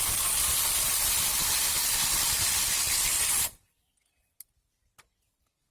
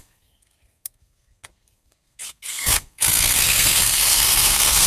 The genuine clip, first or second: first